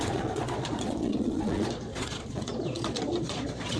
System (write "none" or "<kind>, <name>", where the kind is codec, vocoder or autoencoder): vocoder, Vocos